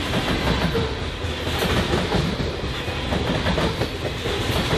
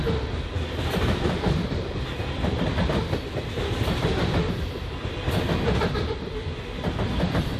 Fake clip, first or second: second